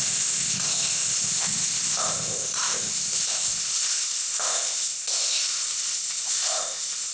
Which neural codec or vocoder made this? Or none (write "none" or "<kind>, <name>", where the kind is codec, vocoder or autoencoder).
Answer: codec, ZipCodec